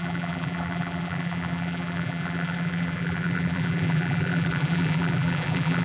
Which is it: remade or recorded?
remade